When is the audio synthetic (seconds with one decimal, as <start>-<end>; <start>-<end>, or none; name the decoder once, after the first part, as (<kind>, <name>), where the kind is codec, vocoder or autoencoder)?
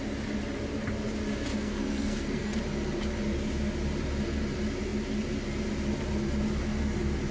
1.5-2.6 (codec, SNAC)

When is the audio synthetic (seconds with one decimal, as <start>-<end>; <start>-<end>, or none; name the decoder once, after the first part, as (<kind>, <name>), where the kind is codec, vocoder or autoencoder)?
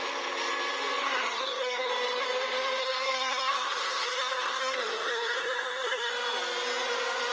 1.0-1.9 (codec, SNAC); 2.8-6.1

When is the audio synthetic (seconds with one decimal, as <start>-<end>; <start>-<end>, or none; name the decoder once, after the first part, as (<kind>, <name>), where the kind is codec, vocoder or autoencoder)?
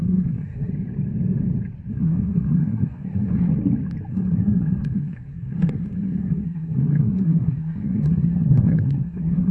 0.0-0.7 (codec, SNAC); 1.9-3.5; 4.1-9.5